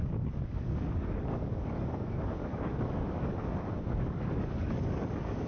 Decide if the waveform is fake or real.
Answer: fake